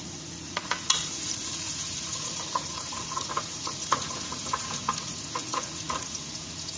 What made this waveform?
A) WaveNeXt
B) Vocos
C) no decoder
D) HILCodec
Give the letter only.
B